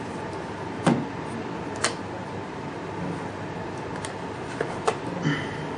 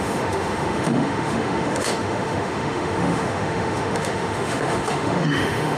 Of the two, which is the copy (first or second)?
second